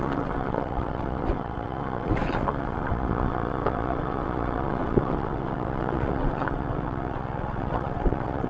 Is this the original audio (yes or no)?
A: no